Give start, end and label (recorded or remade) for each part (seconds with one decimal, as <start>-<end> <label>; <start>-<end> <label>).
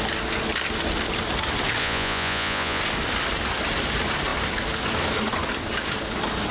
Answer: 0.0-1.8 recorded; 1.8-2.8 remade; 2.8-6.5 recorded